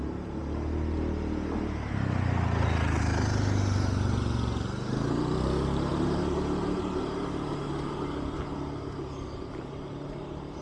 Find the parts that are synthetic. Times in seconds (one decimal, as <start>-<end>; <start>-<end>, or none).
none